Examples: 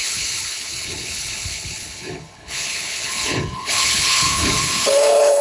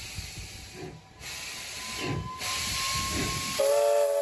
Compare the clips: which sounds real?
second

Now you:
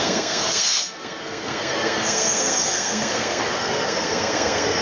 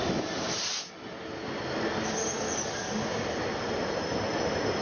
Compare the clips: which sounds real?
second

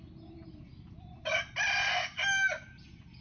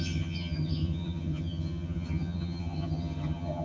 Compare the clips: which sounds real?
first